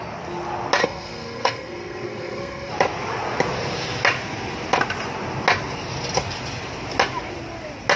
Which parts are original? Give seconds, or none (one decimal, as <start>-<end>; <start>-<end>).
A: 0.0-0.8; 2.7-8.0